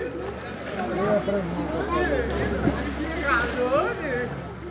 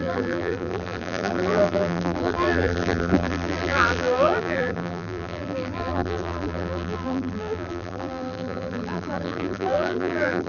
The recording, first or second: first